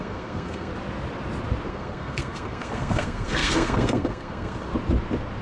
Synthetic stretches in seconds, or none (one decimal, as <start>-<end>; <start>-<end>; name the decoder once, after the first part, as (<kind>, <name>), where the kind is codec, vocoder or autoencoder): 0.0-0.7 (codec, SNAC); 1.7-4.7